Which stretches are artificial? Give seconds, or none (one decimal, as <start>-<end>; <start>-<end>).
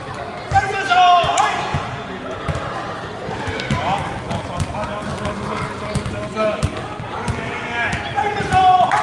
1.3-2.5